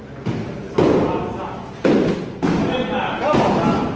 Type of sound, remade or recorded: recorded